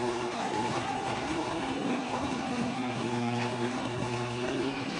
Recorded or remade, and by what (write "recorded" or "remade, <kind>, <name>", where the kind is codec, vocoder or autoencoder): remade, codec, SNAC